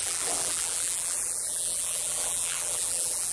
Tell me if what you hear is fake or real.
fake